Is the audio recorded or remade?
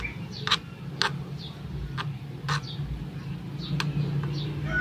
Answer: recorded